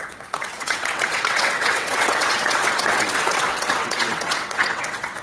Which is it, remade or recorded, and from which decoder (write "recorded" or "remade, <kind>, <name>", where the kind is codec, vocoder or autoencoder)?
remade, vocoder, WaveNeXt